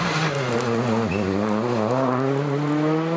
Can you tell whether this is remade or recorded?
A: recorded